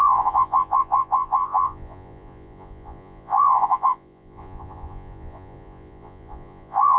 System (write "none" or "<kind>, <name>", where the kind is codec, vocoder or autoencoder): vocoder, Vocos